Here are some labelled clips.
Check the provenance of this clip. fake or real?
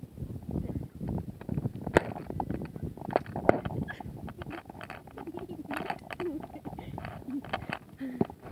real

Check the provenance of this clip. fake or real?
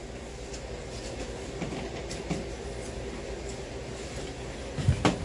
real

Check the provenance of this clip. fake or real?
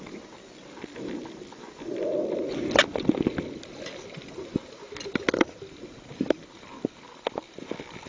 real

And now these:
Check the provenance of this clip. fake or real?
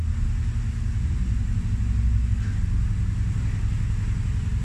real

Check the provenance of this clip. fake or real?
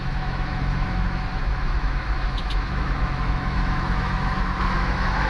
fake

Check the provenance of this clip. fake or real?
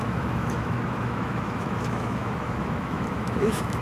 fake